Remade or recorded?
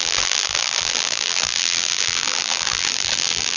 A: remade